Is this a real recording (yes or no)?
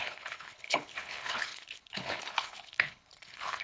no